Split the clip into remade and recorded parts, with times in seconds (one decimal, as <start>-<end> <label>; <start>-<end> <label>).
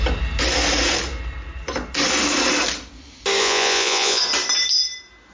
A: 0.0-3.4 recorded; 3.4-4.2 remade; 4.2-5.3 recorded